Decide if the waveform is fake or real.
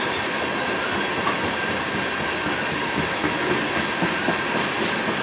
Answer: real